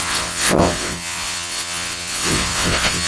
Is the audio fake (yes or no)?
yes